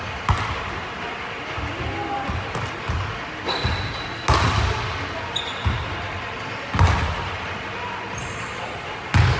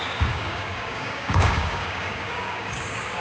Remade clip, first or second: second